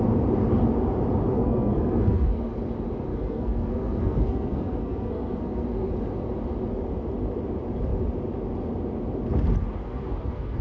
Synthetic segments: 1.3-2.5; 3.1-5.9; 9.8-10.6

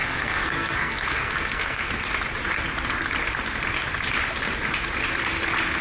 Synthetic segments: 0.0-1.9